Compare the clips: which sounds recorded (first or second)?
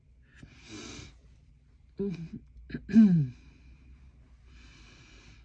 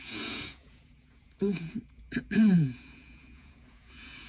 first